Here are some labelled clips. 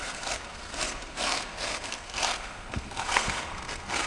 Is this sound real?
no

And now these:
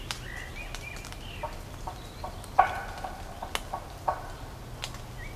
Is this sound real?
yes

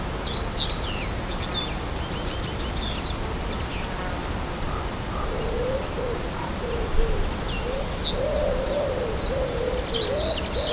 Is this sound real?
yes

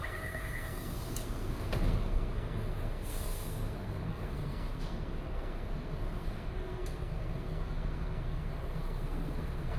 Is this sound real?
no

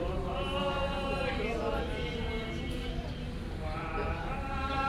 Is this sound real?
yes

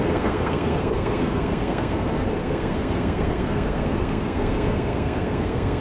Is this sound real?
no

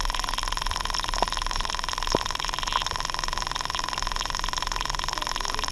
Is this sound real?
yes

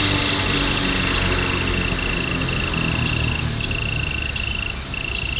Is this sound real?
yes